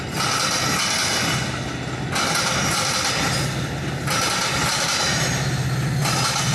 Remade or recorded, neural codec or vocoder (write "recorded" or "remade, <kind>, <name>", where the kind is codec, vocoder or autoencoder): recorded